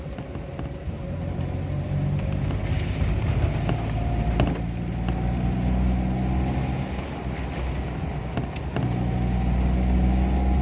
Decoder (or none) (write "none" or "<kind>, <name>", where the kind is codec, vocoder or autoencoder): none